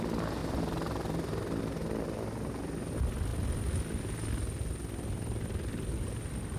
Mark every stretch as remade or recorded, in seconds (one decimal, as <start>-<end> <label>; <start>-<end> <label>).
0.0-0.4 recorded; 0.4-1.6 remade; 1.6-6.6 recorded